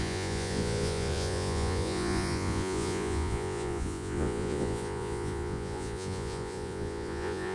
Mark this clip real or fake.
fake